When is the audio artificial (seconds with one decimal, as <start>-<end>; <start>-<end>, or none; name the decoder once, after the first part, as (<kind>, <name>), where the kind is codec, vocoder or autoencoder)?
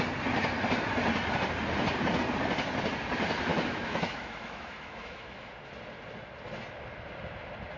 3.5-5.5 (autoencoder, DAC-VAE)